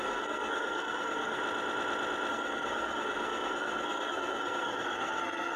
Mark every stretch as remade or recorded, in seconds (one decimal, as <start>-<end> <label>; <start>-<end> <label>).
0.0-1.4 remade; 1.4-2.3 recorded; 2.3-5.6 remade